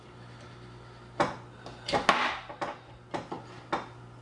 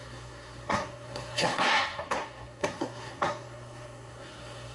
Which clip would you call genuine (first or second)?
first